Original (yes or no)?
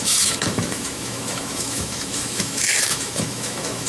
no